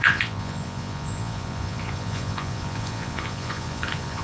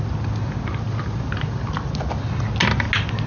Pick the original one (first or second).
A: second